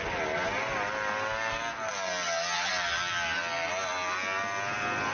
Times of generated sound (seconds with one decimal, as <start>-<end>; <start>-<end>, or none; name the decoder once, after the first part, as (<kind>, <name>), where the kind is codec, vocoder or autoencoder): none